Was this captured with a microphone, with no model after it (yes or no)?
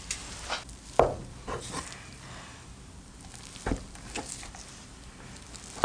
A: yes